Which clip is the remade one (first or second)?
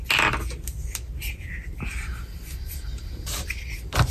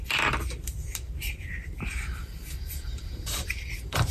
second